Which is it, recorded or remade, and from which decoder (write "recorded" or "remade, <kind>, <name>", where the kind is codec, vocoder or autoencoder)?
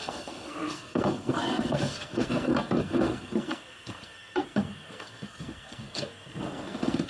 remade, codec, SNAC